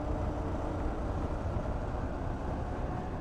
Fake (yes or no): no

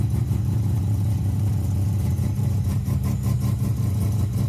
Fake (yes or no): yes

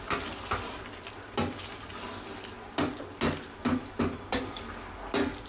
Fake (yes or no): no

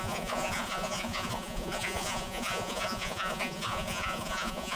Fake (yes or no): yes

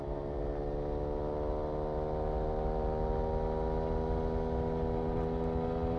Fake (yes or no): no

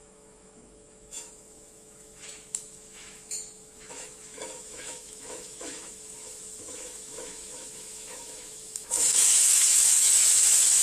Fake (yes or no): yes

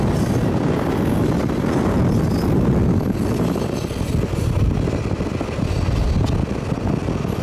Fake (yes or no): no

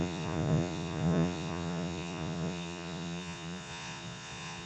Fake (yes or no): yes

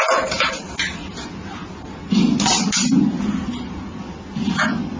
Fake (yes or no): no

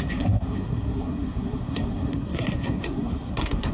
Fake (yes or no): yes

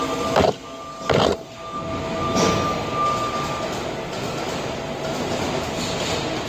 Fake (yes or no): no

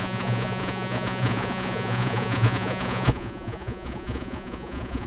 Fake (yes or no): yes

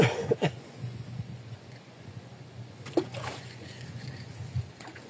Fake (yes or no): yes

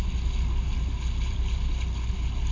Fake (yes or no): no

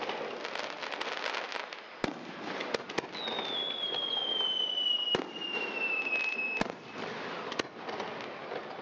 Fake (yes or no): no